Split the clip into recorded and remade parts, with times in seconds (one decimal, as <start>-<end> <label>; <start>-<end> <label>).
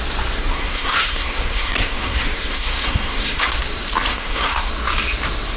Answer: 0.0-0.5 recorded; 0.5-3.4 remade; 3.4-4.1 recorded; 4.1-4.7 remade; 4.7-5.6 recorded